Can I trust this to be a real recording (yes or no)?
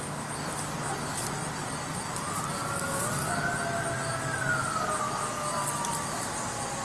yes